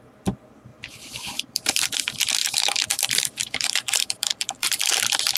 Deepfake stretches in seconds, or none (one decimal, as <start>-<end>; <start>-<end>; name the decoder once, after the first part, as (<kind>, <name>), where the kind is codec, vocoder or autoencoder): 0.7-1.9 (vocoder, BigVGAN v2); 2.4-5.0